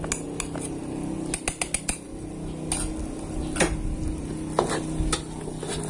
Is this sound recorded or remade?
recorded